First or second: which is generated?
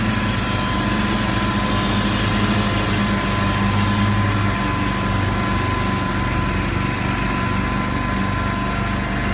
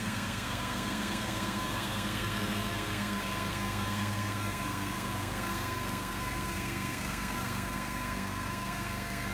second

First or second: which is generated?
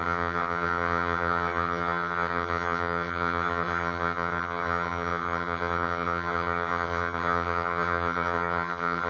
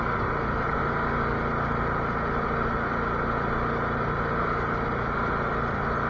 first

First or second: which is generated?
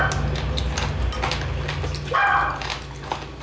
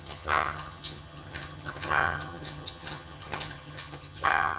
second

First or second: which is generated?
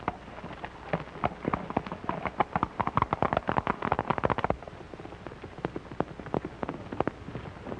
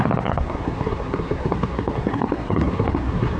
second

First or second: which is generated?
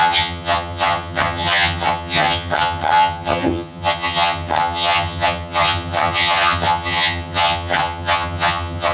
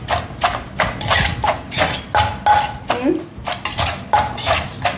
first